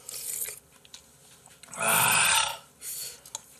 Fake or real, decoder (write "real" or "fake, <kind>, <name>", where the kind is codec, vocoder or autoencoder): real